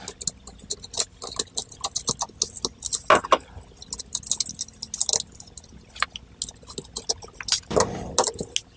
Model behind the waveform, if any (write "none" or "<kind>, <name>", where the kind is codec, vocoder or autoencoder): none